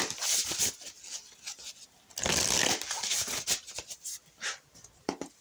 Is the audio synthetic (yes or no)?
no